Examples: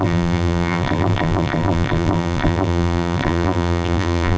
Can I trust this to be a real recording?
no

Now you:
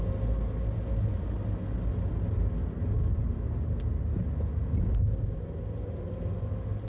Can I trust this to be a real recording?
yes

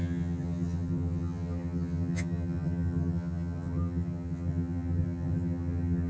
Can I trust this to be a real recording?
no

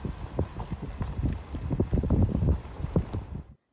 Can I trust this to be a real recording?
yes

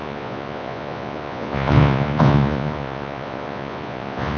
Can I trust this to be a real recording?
no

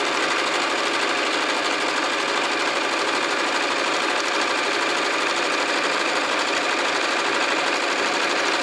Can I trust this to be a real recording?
yes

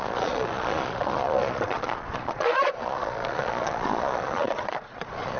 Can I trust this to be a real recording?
no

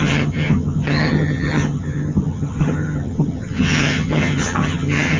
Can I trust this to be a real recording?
no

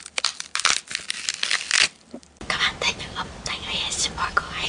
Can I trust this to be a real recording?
yes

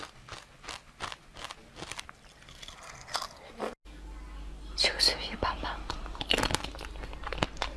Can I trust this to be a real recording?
yes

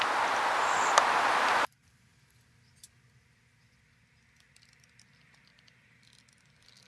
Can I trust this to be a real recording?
yes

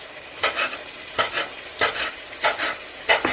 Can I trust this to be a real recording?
yes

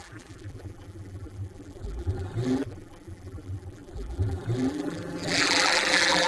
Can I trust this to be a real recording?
no